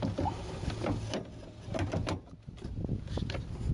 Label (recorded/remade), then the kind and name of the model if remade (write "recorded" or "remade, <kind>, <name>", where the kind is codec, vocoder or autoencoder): recorded